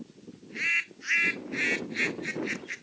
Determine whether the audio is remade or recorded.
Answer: recorded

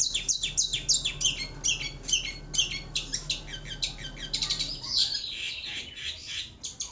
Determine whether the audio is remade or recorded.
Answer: recorded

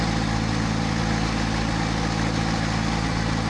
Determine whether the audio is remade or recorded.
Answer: recorded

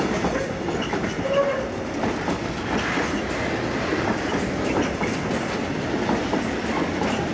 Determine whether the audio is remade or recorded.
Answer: recorded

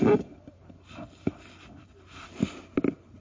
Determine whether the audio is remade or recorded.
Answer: recorded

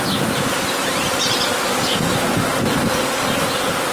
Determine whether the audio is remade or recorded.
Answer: recorded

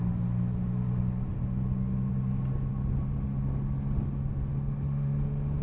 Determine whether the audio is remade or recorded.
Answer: recorded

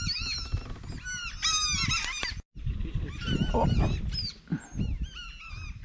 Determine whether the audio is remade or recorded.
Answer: recorded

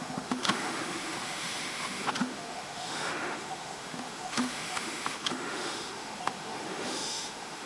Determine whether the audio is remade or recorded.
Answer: remade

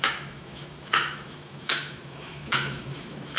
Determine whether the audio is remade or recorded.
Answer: remade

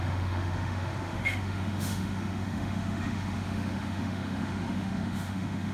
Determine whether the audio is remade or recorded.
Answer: remade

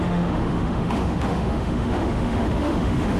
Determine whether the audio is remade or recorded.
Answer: remade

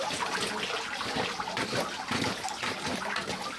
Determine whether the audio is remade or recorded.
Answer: recorded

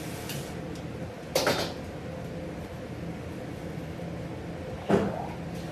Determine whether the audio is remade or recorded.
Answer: recorded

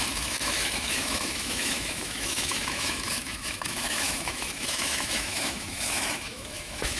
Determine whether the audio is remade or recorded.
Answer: remade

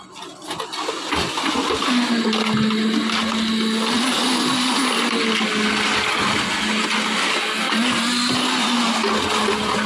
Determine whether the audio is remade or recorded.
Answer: recorded